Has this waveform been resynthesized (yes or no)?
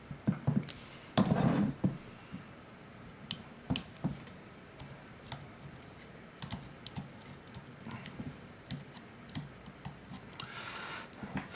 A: yes